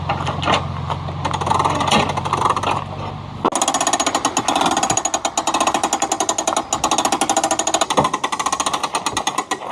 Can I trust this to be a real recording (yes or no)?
yes